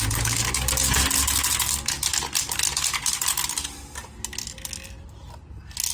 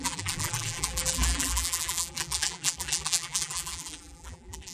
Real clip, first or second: first